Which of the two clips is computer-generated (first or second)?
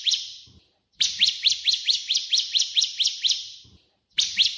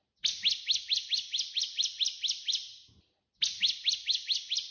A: first